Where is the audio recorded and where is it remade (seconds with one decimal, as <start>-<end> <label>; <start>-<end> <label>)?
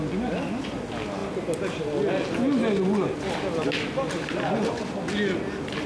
0.0-5.9 recorded